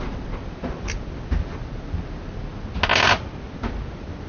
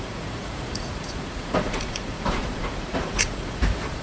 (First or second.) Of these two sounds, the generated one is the second